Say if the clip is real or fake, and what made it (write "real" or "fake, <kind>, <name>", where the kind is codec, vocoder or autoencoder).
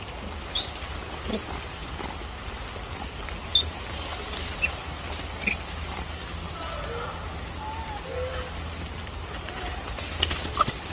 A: real